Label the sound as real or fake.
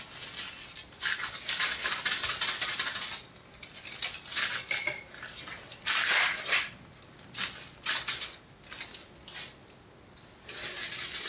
real